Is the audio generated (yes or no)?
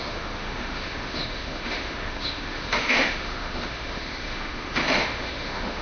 yes